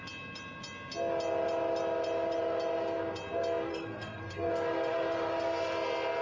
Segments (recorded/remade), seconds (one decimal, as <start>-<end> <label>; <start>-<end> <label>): 0.0-3.7 recorded; 3.7-4.5 remade; 4.5-6.2 recorded